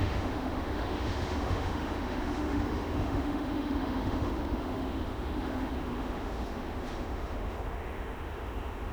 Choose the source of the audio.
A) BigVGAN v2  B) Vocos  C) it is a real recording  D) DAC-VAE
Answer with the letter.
D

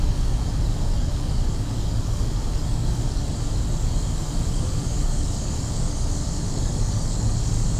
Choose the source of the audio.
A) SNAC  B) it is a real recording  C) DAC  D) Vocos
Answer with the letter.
C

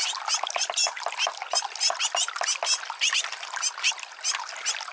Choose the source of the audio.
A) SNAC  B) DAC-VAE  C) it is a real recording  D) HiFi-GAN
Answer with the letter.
C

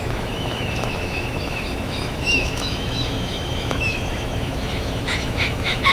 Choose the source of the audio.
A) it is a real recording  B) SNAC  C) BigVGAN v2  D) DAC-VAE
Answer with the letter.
D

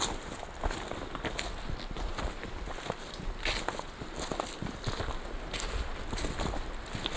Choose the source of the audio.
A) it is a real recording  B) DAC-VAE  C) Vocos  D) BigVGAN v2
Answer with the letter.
A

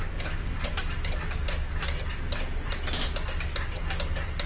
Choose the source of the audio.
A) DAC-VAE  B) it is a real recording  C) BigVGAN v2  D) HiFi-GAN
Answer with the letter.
B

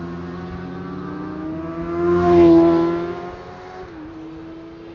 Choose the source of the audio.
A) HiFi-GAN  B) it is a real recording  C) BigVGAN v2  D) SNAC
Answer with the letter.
B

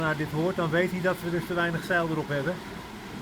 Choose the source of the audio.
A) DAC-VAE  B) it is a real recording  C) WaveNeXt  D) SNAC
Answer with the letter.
B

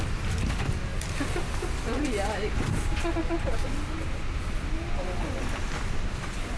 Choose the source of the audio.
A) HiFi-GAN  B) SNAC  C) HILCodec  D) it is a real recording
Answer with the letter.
D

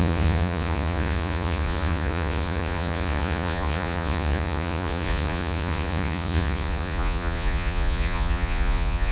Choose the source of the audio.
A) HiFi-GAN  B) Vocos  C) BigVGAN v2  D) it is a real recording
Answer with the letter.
B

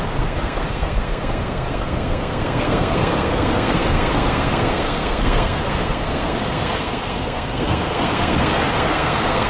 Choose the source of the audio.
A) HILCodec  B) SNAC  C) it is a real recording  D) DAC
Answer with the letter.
B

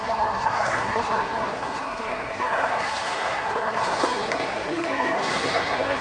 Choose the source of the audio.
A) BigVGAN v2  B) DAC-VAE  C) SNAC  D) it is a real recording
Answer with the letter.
C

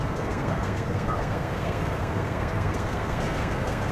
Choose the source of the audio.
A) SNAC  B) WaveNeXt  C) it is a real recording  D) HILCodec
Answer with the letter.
A